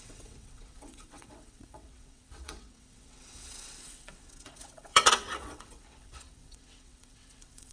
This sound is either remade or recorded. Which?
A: remade